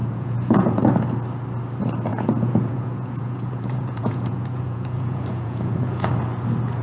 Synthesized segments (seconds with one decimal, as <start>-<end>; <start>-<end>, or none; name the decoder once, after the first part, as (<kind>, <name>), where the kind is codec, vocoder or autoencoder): 0.0-0.8 (vocoder, Vocos); 2.1-6.1